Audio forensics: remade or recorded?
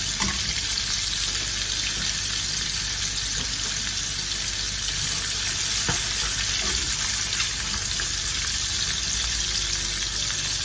recorded